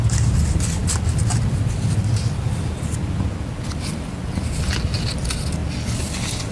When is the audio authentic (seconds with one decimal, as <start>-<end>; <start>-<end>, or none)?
0.0-6.5